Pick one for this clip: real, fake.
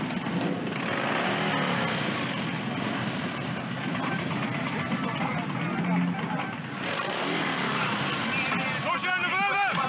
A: real